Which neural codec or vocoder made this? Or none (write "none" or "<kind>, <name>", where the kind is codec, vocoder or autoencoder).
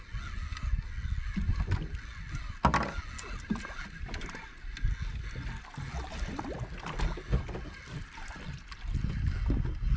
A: none